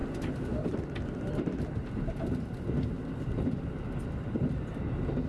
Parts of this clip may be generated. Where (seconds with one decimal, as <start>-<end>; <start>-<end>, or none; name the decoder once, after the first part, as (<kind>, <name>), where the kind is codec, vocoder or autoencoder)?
none